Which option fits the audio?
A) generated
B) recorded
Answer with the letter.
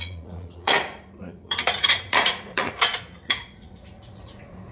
A